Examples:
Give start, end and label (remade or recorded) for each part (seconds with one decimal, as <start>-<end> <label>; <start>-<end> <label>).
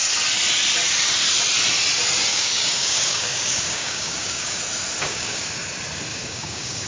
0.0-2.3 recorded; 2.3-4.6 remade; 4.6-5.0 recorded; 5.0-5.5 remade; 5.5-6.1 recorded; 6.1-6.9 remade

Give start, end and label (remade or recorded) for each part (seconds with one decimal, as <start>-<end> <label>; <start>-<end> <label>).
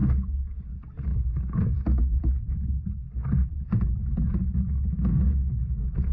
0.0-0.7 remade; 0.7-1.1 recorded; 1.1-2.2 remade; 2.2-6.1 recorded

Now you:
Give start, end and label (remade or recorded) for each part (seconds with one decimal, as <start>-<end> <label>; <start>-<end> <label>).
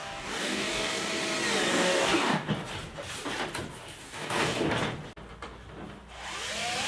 0.0-1.1 remade; 1.1-1.7 recorded; 1.7-2.5 remade; 2.5-4.0 recorded; 4.0-4.7 remade; 4.7-6.9 recorded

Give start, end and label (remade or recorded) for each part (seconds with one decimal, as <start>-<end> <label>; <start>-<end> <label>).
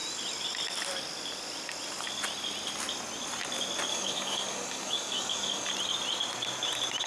0.0-3.9 recorded; 3.9-5.7 remade; 5.7-7.1 recorded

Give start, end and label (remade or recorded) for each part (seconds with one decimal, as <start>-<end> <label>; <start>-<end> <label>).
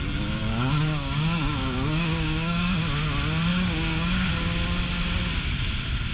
0.0-0.4 recorded; 0.4-2.8 remade; 2.8-3.5 recorded; 3.5-4.3 remade; 4.3-6.1 recorded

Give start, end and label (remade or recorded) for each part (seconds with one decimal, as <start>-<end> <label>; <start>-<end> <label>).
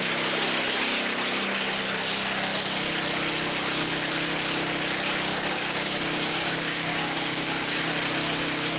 0.0-5.3 recorded; 5.3-7.8 remade; 7.8-8.8 recorded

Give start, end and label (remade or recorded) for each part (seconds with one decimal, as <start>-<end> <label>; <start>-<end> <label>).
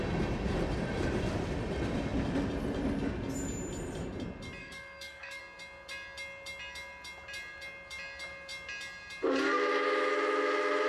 0.0-4.6 recorded; 4.6-5.4 remade; 5.4-10.9 recorded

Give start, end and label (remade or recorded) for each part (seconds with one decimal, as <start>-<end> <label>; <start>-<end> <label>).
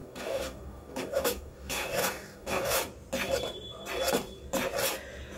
0.0-2.8 remade; 2.8-5.4 recorded